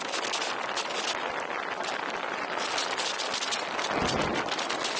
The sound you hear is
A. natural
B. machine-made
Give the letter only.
A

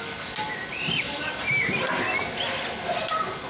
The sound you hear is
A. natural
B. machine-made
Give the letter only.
A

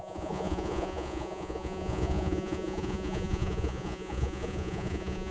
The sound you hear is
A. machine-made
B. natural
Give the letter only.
A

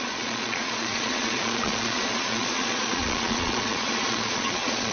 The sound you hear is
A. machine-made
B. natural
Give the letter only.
A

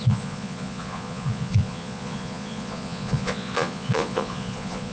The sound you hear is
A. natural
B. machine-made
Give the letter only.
B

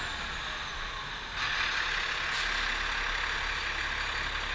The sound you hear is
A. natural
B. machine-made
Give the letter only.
A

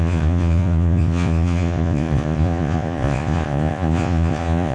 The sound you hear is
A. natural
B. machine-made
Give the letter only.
B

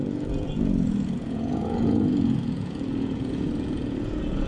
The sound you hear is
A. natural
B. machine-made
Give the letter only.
B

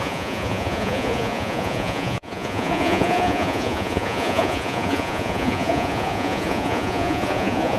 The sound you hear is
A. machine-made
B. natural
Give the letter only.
A